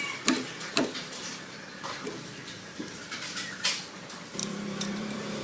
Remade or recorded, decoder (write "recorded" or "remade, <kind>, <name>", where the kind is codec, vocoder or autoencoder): remade, vocoder, BigVGAN v2